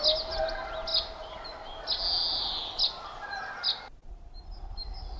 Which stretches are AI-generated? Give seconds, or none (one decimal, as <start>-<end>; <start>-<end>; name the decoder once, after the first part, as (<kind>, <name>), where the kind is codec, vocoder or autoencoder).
none